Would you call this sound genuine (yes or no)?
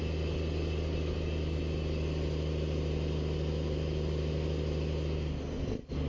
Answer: yes